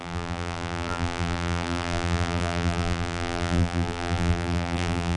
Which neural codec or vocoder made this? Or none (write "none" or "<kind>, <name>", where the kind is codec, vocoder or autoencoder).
vocoder, BigVGAN v2